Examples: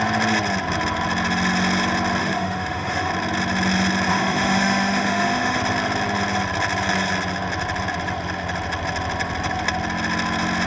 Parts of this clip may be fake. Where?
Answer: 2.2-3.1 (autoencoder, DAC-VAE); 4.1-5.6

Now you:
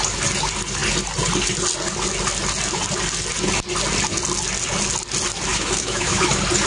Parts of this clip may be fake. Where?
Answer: 5.5-6.3 (autoencoder, DAC-VAE)

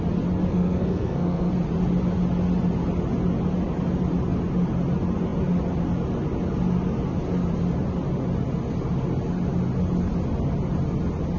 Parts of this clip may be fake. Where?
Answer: 0.5-1.5 (codec, SNAC)

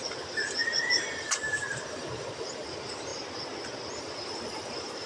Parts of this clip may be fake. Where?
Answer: 0.0-3.1 (vocoder, BigVGAN v2); 4.0-5.1